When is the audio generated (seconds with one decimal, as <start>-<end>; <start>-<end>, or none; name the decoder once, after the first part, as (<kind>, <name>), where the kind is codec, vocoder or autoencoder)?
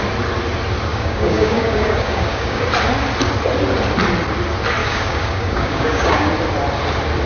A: 0.9-2.6 (codec, DAC); 4.8-6.3